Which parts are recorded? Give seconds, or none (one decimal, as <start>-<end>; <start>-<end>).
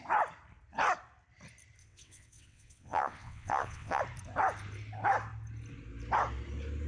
0.0-1.8; 4.0-6.9